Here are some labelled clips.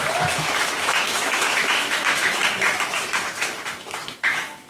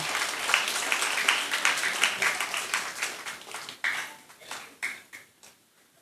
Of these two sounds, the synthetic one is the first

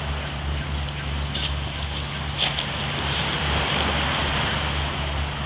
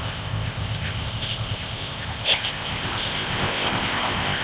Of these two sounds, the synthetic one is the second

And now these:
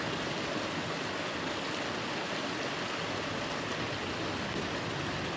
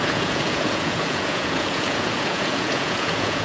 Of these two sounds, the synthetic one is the second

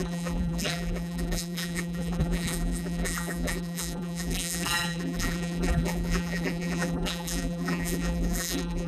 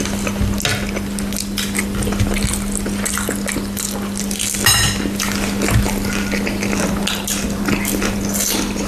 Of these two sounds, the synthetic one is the first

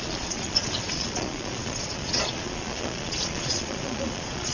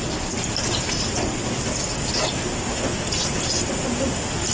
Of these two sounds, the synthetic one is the first